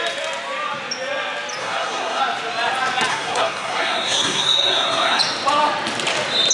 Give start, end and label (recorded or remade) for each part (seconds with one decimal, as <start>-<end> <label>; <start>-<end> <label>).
0.0-1.6 recorded; 1.6-2.2 remade; 2.2-3.1 recorded; 3.1-5.2 remade; 5.2-6.5 recorded